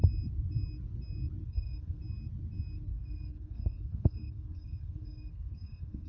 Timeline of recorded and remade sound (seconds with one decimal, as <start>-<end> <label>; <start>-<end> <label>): 0.0-1.4 recorded; 1.4-2.0 remade; 2.0-2.9 recorded; 2.9-6.1 remade